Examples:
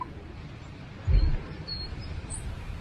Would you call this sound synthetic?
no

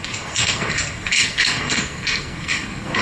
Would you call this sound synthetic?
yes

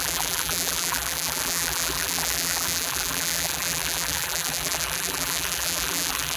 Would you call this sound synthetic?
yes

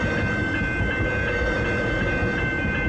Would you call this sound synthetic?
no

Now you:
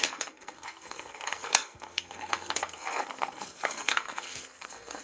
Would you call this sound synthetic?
yes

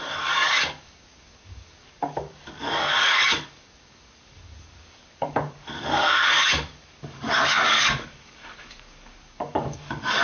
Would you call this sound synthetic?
yes